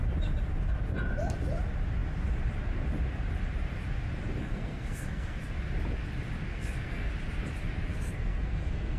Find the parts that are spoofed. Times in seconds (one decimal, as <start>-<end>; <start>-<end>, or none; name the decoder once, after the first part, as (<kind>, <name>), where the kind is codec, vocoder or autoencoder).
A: 4.4-5.4 (codec, SNAC); 6.5-7.1; 7.9-9.0